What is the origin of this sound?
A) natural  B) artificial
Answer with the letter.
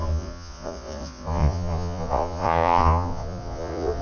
B